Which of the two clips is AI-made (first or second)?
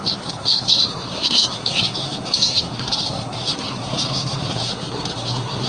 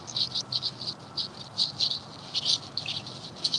first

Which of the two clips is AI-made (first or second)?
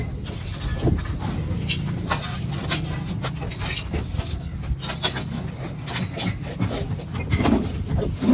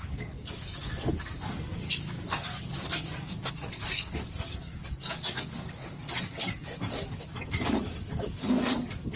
second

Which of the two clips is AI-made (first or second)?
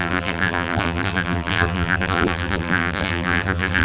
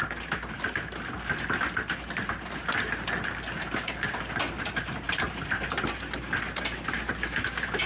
first